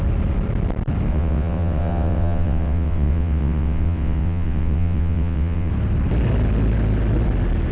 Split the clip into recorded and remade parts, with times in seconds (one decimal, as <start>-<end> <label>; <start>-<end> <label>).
0.0-1.1 recorded; 1.1-5.7 remade; 5.7-7.7 recorded